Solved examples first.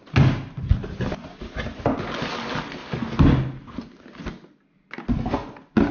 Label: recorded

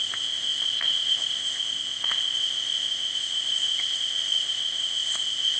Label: remade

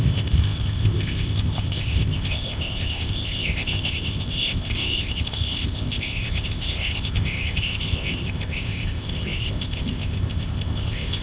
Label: remade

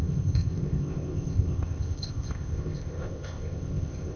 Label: remade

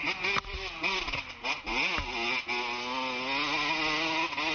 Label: recorded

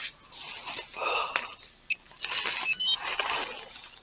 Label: recorded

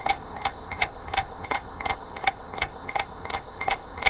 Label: remade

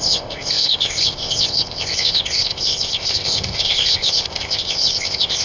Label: remade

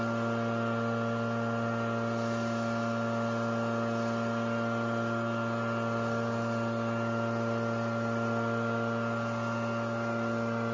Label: recorded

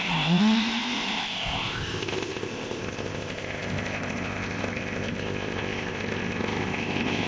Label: remade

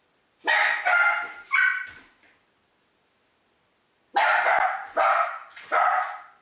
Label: recorded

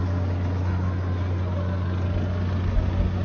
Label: recorded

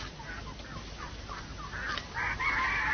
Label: recorded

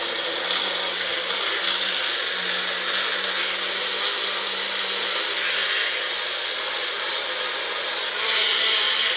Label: recorded